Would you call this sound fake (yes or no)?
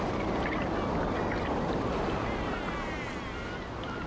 no